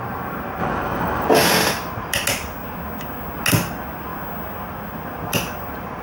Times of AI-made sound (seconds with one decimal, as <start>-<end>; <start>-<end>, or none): 0.6-1.3